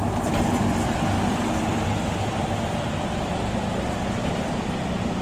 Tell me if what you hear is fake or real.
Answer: real